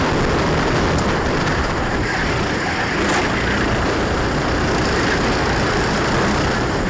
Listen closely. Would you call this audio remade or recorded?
recorded